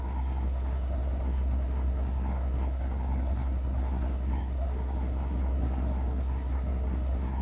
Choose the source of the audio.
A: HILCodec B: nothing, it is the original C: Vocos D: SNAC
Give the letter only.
D